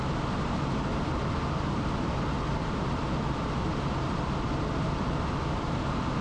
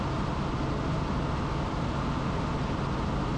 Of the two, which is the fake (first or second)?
first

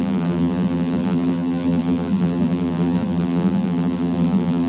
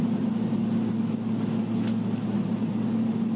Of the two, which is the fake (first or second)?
first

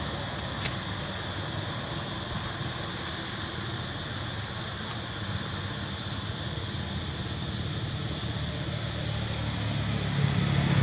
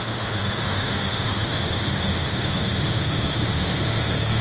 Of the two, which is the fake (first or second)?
second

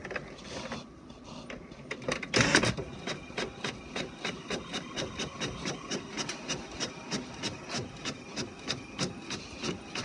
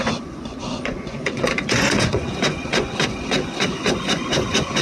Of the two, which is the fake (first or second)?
second